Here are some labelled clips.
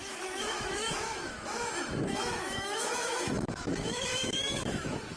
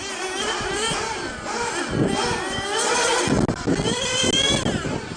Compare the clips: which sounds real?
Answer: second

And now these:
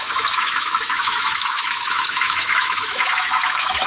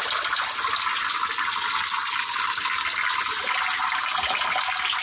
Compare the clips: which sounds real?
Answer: second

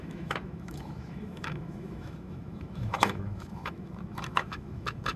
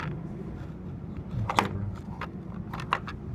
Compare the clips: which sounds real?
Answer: second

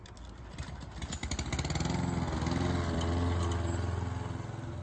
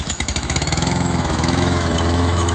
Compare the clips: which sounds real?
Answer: first